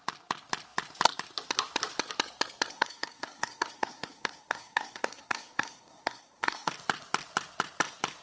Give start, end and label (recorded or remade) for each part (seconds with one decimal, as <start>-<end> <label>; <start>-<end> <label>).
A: 0.0-2.7 recorded; 2.7-6.7 remade; 6.7-8.2 recorded